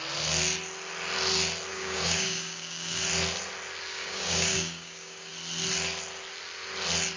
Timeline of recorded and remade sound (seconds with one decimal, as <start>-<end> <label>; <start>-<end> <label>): 0.0-1.7 recorded; 1.7-3.0 remade; 3.0-3.9 recorded; 3.9-5.3 remade; 5.3-7.2 recorded